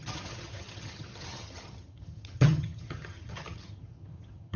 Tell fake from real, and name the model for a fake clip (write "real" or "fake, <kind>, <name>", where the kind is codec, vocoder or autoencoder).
fake, vocoder, HiFi-GAN